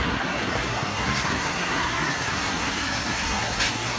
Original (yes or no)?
no